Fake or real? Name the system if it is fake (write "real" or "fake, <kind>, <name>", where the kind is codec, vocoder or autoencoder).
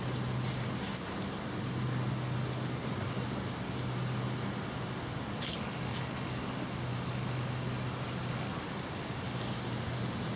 real